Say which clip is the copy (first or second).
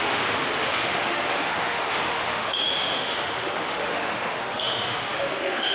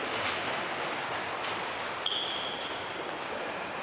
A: first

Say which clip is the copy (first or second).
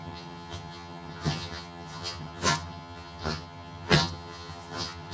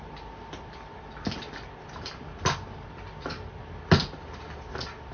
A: first